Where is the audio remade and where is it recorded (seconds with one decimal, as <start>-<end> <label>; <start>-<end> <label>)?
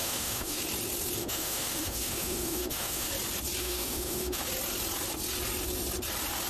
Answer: 0.0-0.6 remade; 0.6-1.2 recorded; 1.2-3.1 remade; 3.1-3.6 recorded; 3.6-4.4 remade; 4.4-6.5 recorded